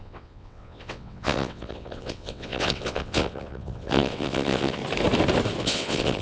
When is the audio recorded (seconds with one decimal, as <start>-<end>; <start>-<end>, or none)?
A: 4.8-5.6